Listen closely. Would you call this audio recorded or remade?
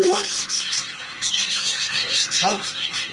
remade